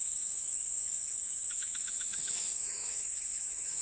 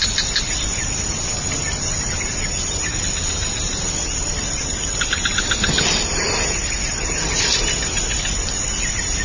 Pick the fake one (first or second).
first